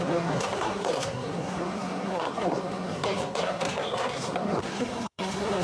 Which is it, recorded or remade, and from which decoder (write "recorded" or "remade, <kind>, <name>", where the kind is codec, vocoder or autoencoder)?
remade, codec, SNAC